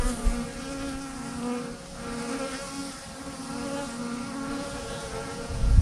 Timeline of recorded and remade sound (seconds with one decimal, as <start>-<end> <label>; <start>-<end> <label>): 0.0-4.5 recorded; 4.5-5.8 remade